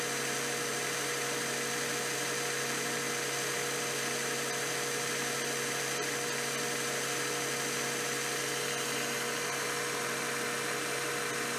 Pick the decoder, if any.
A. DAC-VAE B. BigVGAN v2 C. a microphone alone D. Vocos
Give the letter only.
C